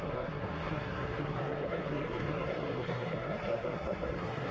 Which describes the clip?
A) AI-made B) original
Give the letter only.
A